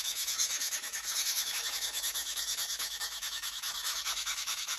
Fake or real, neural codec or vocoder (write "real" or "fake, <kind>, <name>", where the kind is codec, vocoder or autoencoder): fake, autoencoder, DAC-VAE